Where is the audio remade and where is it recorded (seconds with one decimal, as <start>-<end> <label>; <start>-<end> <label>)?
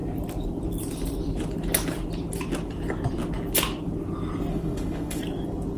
0.0-4.5 recorded; 4.5-5.2 remade; 5.2-5.8 recorded